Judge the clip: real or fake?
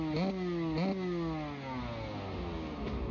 real